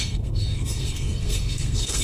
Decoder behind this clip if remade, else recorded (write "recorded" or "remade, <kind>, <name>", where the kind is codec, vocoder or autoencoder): remade, codec, SNAC